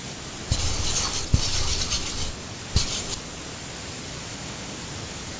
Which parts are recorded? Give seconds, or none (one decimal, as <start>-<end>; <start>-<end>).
0.0-4.3; 4.8-5.4